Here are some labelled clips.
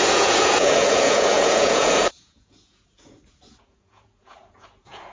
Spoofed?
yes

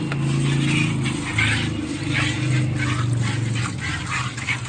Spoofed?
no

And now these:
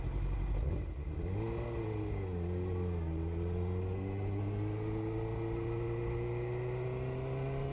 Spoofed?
no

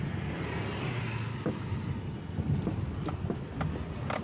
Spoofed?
no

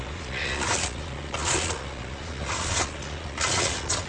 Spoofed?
yes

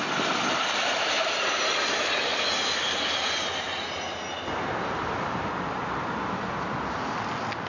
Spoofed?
no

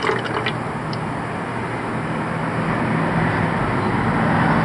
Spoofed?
no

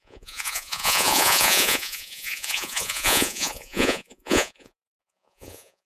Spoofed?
yes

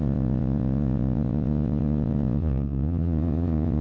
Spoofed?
yes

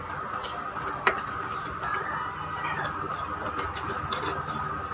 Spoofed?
no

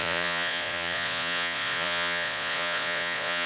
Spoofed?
yes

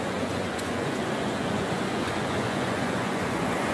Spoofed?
yes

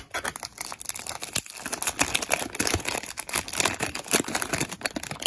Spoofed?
no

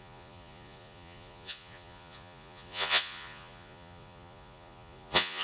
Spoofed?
yes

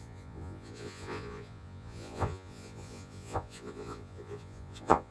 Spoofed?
yes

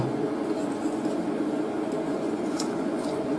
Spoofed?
yes